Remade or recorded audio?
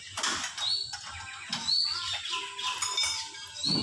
recorded